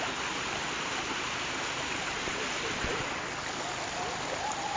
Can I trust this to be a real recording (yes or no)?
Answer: yes